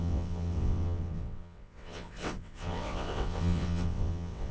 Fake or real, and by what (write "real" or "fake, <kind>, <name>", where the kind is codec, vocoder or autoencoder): fake, vocoder, WaveNeXt